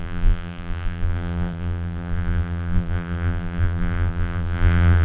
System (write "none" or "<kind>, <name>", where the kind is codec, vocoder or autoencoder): vocoder, BigVGAN v2